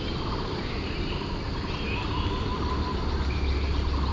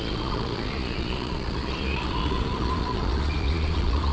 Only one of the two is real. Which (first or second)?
first